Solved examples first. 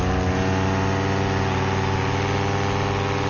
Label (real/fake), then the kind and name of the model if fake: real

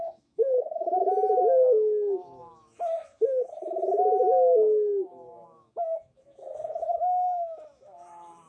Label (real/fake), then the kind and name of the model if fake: fake, autoencoder, DAC-VAE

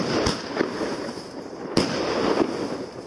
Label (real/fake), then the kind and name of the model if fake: real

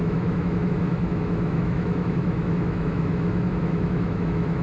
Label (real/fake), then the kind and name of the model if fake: fake, autoencoder, DAC-VAE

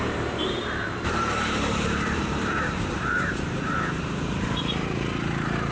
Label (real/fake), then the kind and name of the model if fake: fake, vocoder, BigVGAN v2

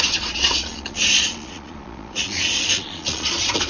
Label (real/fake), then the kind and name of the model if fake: fake, vocoder, Vocos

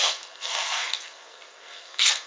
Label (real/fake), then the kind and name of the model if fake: fake, codec, SNAC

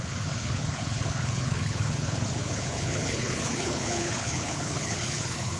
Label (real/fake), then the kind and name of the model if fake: fake, codec, HILCodec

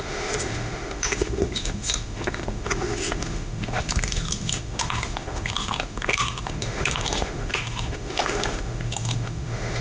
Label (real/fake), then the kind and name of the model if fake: fake, autoencoder, DAC-VAE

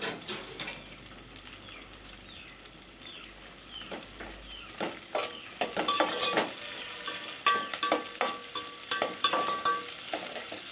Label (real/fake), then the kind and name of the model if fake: fake, vocoder, BigVGAN v2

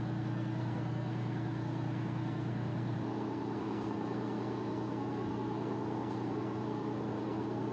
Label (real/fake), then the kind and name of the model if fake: fake, codec, SNAC